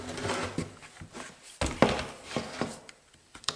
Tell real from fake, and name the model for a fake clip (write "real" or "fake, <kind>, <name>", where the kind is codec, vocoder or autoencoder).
real